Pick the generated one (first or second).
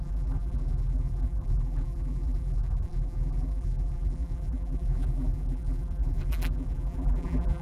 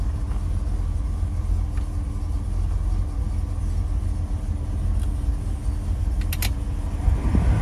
first